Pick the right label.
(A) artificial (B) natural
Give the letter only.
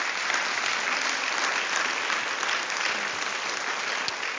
B